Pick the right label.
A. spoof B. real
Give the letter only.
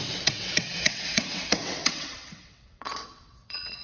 A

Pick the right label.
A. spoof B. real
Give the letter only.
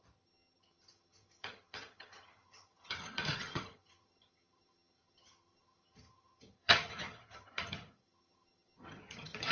A